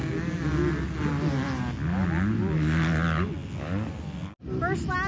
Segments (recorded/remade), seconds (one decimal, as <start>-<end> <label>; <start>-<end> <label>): 0.0-5.1 recorded